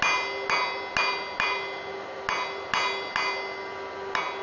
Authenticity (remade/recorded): recorded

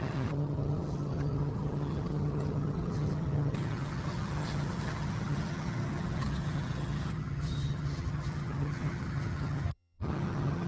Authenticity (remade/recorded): remade